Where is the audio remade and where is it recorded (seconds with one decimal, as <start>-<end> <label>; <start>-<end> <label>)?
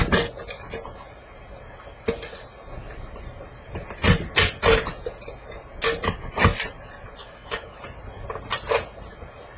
0.0-7.2 recorded; 7.2-7.8 remade; 7.8-9.6 recorded